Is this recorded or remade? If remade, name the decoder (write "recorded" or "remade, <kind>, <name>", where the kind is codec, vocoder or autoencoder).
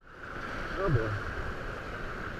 recorded